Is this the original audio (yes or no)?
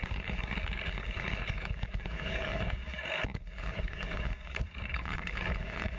no